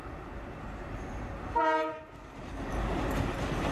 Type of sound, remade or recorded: recorded